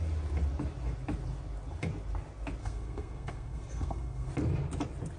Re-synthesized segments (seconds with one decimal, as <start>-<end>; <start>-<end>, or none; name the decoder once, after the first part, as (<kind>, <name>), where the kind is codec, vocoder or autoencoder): 2.6-4.3 (codec, SNAC)